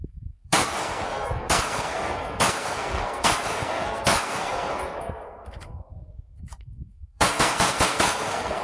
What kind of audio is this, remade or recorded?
remade